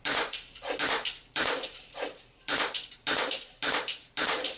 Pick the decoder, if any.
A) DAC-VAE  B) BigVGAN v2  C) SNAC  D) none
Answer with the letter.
B